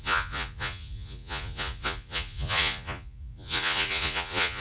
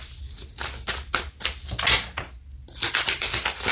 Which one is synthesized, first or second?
first